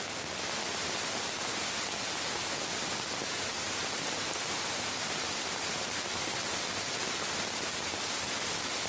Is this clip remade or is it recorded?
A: recorded